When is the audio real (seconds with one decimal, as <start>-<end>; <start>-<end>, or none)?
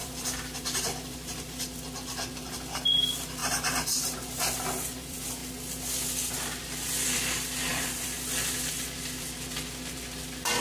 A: 3.4-4.0; 5.4-6.3